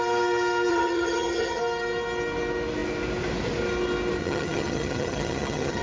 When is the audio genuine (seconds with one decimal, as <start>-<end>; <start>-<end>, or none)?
0.0-0.7; 1.6-4.2